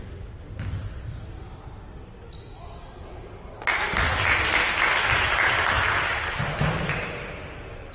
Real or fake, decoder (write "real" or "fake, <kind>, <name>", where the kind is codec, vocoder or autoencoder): real